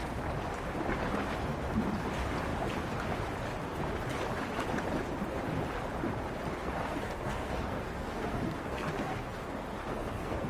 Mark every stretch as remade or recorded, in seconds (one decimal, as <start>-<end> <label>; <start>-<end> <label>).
0.0-6.6 recorded; 6.6-10.5 remade